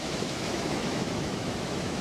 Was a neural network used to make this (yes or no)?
yes